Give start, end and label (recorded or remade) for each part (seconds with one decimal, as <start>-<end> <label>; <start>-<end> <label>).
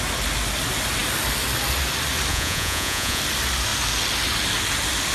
0.0-2.3 recorded; 2.3-3.2 remade; 3.2-5.1 recorded